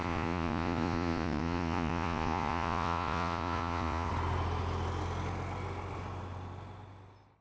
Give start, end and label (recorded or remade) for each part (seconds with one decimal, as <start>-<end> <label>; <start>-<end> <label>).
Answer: 0.0-4.1 remade; 4.1-7.4 recorded